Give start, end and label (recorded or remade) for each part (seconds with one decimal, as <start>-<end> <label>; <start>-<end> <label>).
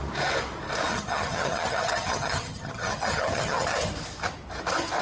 0.0-0.9 recorded; 0.9-3.9 remade; 3.9-5.0 recorded